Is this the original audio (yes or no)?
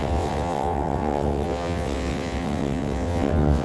no